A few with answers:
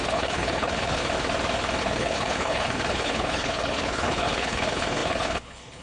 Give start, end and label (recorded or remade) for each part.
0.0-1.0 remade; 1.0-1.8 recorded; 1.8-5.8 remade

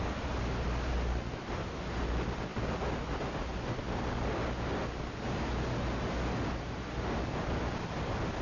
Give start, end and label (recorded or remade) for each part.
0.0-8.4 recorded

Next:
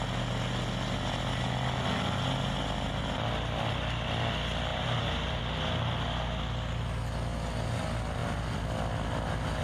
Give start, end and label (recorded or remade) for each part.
0.0-4.7 recorded; 4.7-5.4 remade; 5.4-9.6 recorded

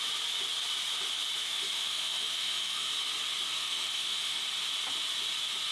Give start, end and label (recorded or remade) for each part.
0.0-1.4 recorded; 1.4-2.9 remade; 2.9-3.6 recorded; 3.6-4.4 remade; 4.4-5.7 recorded